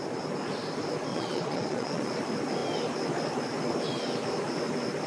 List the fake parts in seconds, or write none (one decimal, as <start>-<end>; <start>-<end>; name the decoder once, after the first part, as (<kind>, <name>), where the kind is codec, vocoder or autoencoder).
1.1-2.1 (vocoder, Vocos)